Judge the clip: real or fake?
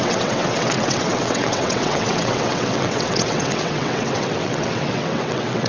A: fake